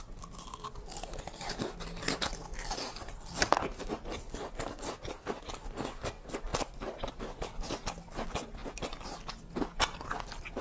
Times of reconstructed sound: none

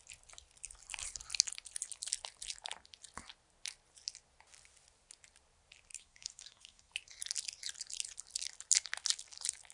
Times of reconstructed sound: 5.9-6.9

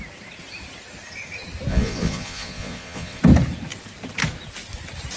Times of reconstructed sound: 1.7-3.2

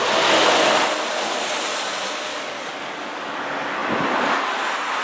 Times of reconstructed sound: 2.3-3.4

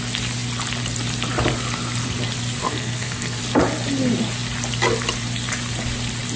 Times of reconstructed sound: 2.6-3.4

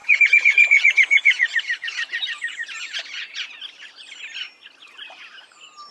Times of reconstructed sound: 0.0-3.5

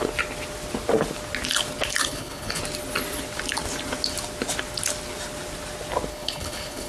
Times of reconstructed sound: 2.0-2.6; 6.1-6.9